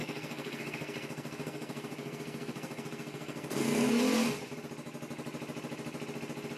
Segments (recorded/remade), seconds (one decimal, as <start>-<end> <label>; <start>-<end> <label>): 0.0-4.0 remade; 4.0-6.6 recorded